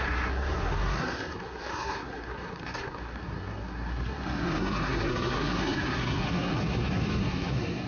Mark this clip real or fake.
fake